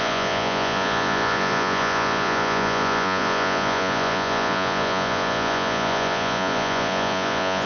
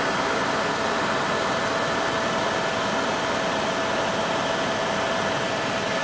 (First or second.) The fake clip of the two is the first